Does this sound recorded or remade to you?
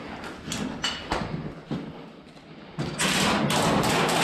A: recorded